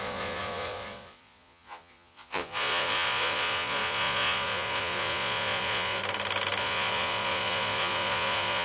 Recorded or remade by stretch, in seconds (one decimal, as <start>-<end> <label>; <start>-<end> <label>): 0.0-6.0 remade; 6.0-6.6 recorded; 6.6-8.6 remade